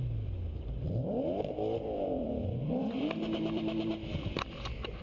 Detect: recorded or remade remade